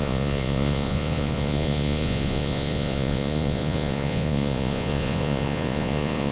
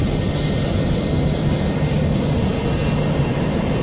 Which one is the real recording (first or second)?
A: second